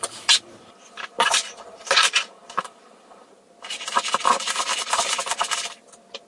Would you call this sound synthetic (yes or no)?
no